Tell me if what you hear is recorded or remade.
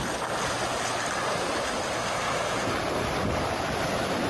recorded